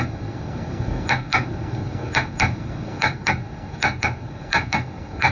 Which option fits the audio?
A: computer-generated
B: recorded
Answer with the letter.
A